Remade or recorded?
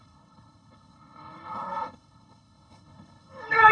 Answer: remade